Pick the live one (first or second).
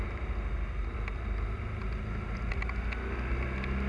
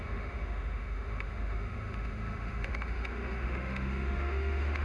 first